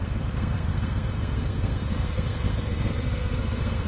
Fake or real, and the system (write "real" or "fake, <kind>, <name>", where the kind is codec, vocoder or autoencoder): fake, codec, SNAC